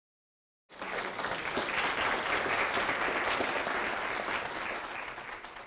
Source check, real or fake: real